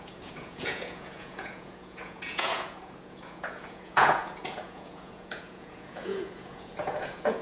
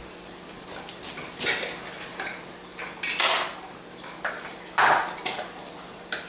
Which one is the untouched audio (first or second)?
second